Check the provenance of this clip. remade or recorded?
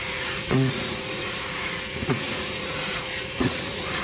remade